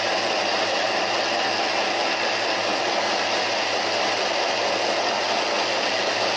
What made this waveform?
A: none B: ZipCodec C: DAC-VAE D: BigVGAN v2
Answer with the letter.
A